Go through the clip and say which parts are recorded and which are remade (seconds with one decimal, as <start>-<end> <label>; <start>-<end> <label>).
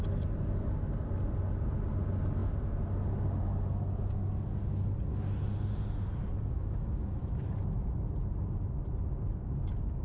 0.0-10.0 recorded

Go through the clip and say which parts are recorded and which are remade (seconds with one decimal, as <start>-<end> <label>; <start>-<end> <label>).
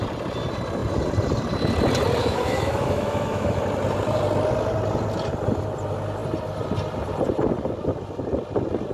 0.0-2.2 recorded; 2.2-3.6 remade; 3.6-8.9 recorded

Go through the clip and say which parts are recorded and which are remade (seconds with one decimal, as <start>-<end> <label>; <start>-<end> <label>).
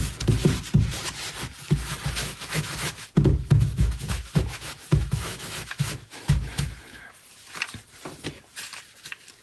0.0-2.2 recorded; 2.2-7.1 remade; 7.1-9.4 recorded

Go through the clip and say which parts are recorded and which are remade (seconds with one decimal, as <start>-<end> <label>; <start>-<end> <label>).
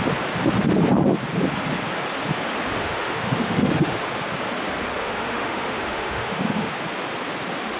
0.0-2.8 recorded; 2.8-4.1 remade; 4.1-5.0 recorded; 5.0-6.7 remade; 6.7-7.8 recorded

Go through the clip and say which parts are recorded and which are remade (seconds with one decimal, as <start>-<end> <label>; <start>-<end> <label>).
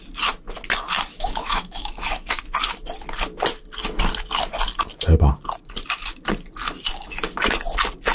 0.0-1.1 recorded; 1.1-2.4 remade; 2.4-8.1 recorded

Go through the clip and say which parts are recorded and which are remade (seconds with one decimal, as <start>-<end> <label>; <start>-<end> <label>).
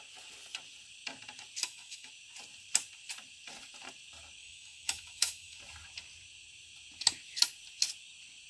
0.0-1.6 recorded; 1.6-2.1 remade; 2.1-4.4 recorded; 4.4-5.6 remade; 5.6-8.5 recorded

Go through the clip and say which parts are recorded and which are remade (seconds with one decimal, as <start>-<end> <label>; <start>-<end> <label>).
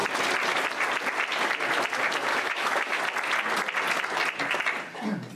0.0-2.3 recorded; 2.3-3.0 remade; 3.0-5.4 recorded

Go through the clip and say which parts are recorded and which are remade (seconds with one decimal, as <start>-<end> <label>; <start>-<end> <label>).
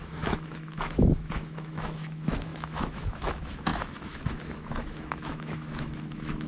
0.0-6.5 remade